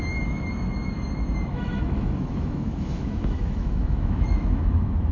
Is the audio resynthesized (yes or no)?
yes